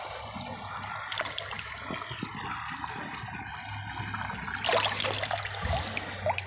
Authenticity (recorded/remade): recorded